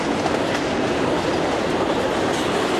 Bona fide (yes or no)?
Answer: yes